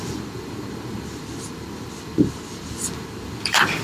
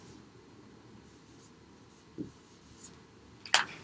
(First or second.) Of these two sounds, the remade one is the first